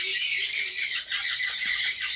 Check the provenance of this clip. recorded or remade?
remade